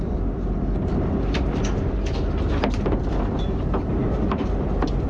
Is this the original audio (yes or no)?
yes